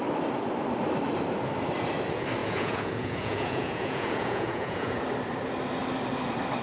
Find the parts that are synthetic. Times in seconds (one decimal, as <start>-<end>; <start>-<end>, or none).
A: 2.4-5.0